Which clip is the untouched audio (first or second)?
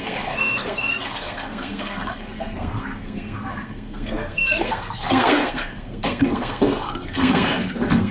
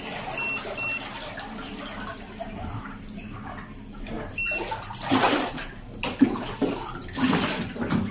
second